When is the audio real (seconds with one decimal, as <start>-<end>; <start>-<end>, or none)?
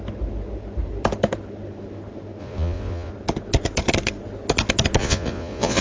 0.0-2.4; 3.1-5.0